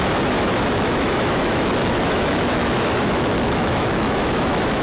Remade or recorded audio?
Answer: remade